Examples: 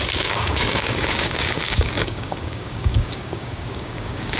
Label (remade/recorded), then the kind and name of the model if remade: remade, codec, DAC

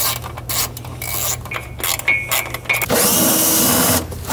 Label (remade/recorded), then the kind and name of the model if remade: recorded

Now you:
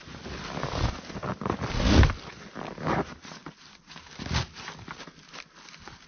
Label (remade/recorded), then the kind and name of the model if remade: recorded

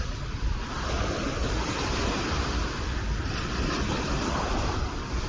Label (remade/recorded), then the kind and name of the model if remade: recorded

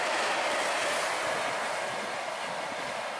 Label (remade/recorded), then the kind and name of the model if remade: recorded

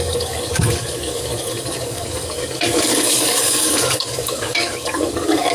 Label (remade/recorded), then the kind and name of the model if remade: remade, codec, DAC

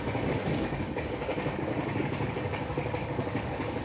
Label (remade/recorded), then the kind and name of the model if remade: remade, codec, DAC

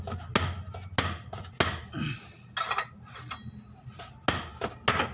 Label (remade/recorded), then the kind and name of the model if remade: recorded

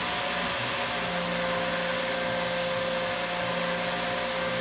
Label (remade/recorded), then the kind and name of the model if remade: recorded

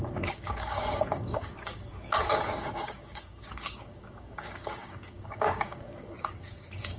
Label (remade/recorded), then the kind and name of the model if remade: remade, codec, DAC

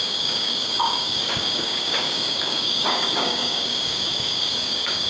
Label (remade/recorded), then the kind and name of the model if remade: remade, codec, DAC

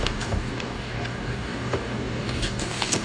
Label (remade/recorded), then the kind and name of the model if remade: remade, codec, DAC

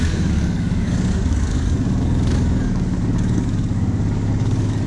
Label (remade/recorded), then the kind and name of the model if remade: remade, codec, DAC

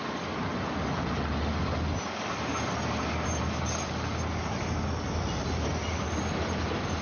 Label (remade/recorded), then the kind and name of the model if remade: recorded